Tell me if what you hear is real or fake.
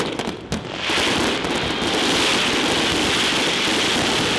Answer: real